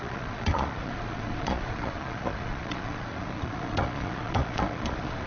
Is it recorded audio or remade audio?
remade